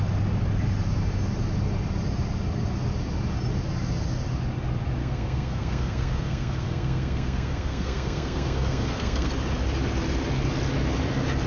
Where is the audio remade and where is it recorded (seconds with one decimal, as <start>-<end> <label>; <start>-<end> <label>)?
0.0-5.0 recorded; 5.0-9.3 remade; 9.3-11.5 recorded